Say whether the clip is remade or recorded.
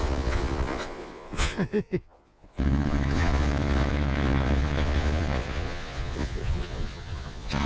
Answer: remade